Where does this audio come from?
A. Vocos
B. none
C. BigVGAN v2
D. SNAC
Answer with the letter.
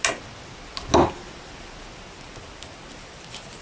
B